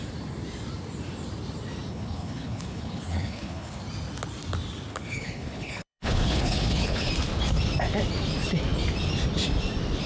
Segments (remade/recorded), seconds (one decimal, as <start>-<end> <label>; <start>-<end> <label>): 0.0-1.9 recorded; 1.9-3.8 remade; 3.8-4.9 recorded; 4.9-7.1 remade; 7.1-10.1 recorded